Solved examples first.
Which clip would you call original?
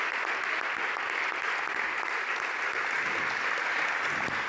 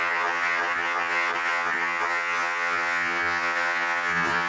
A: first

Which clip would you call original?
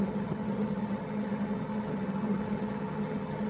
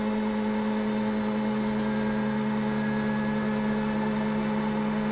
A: second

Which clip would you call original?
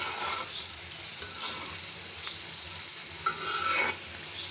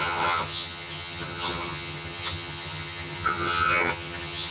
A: first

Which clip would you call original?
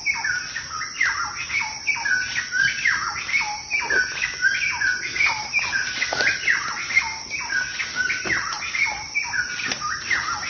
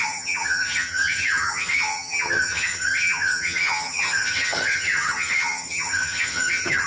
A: first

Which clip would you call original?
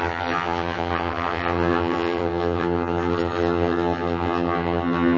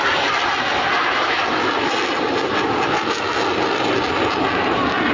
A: second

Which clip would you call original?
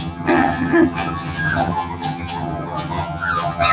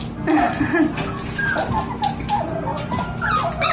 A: second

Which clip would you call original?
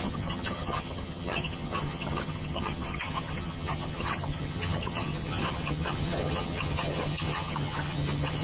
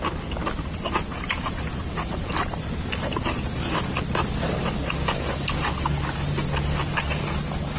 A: second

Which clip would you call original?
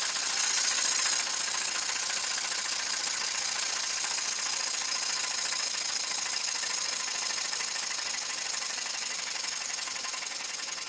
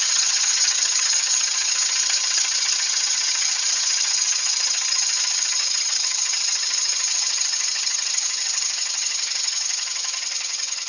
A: first